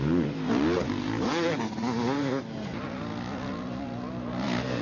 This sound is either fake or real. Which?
real